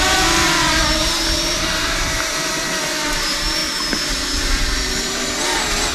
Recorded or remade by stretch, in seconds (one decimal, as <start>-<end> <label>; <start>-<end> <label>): 0.0-3.6 remade; 3.6-4.1 recorded; 4.1-5.9 remade